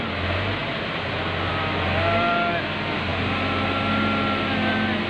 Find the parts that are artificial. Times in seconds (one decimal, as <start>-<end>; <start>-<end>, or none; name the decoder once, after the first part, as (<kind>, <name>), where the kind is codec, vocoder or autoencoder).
none